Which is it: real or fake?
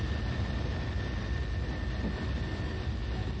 real